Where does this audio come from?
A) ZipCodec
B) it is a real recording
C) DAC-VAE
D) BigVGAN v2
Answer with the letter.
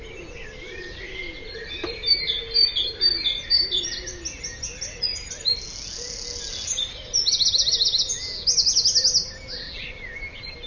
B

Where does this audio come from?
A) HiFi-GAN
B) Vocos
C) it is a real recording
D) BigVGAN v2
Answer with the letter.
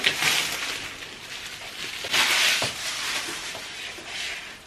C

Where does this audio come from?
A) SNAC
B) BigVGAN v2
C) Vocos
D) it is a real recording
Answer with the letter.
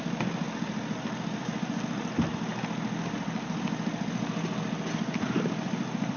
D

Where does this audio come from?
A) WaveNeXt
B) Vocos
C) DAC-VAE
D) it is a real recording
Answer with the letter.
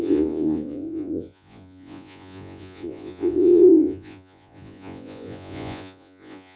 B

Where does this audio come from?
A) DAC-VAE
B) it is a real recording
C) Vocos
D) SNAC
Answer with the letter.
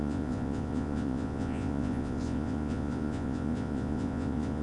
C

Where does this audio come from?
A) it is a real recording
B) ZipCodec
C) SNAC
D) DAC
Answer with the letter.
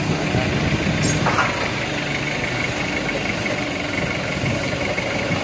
A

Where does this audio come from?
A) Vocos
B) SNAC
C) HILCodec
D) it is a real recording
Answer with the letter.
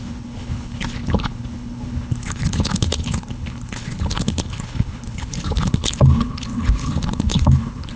C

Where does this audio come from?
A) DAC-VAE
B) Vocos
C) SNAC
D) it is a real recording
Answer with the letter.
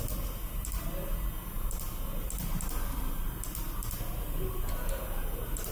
D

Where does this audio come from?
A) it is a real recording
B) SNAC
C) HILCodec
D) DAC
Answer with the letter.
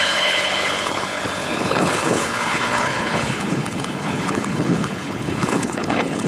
C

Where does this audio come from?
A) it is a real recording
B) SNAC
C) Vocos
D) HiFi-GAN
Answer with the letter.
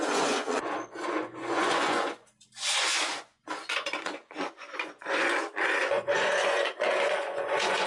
C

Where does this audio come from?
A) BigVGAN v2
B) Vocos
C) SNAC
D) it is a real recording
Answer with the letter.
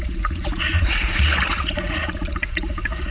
B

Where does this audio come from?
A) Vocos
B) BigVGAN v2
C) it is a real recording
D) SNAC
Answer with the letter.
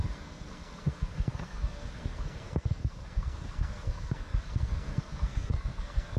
D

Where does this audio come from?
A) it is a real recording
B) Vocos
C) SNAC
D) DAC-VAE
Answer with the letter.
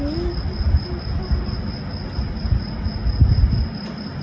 A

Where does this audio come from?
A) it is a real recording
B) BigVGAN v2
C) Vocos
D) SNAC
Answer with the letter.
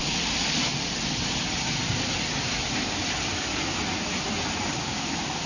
A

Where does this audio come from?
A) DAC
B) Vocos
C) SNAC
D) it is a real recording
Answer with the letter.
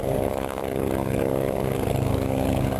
A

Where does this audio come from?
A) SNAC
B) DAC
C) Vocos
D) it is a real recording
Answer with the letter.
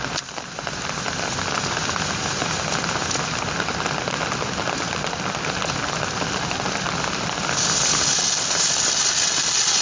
D